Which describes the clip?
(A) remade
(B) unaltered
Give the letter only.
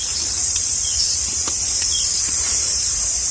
A